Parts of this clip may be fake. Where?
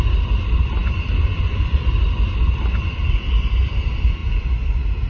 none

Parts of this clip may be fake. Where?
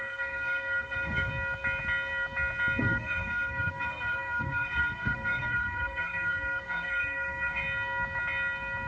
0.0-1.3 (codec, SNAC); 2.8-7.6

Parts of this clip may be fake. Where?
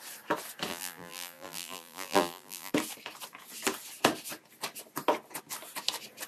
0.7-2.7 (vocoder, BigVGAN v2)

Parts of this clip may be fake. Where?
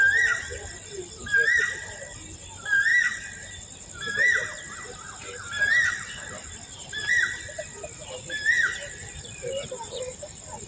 0.0-2.9 (vocoder, BigVGAN v2); 7.1-10.7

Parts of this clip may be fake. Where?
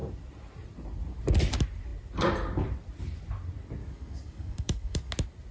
3.8-5.1 (codec, DAC)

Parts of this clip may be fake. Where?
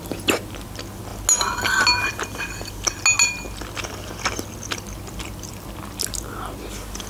none